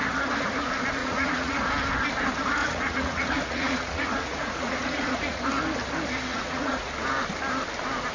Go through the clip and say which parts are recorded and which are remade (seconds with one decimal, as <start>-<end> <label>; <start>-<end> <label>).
0.0-1.0 recorded; 1.0-1.6 remade; 1.6-2.6 recorded; 2.6-5.4 remade; 5.4-6.3 recorded; 6.3-6.9 remade; 6.9-8.1 recorded